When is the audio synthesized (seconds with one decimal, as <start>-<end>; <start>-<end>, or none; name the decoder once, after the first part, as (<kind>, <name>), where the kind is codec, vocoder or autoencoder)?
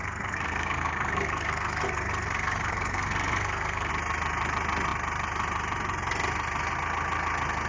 0.0-3.9 (codec, SNAC)